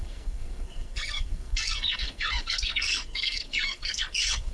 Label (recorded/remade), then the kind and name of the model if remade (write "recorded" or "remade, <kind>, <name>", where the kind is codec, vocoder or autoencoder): remade, codec, SNAC